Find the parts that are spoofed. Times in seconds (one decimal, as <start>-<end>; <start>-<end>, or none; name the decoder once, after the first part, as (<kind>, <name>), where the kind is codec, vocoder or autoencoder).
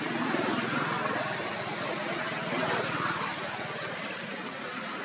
1.5-2.2 (vocoder, Vocos)